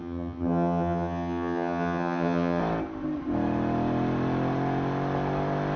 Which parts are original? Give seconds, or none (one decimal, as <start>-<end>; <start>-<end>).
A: 2.6-5.8